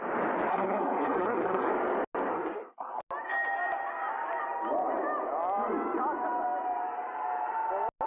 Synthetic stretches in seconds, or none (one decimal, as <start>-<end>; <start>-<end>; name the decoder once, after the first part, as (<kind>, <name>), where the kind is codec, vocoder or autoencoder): 0.5-1.7 (codec, SNAC); 2.3-3.0